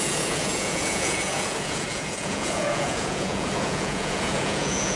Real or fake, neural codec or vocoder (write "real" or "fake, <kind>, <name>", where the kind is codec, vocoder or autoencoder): fake, vocoder, Vocos